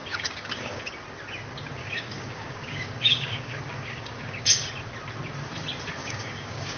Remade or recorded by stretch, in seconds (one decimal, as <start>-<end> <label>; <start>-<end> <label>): 0.0-0.8 remade; 0.8-1.8 recorded; 1.8-4.7 remade; 4.7-6.0 recorded; 6.0-6.8 remade